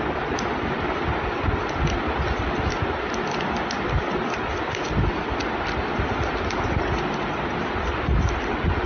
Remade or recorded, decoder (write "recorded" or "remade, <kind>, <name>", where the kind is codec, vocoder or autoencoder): recorded